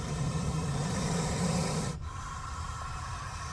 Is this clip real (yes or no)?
no